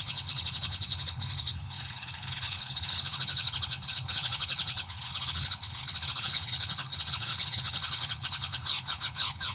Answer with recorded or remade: remade